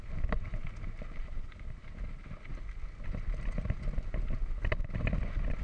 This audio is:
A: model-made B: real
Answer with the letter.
B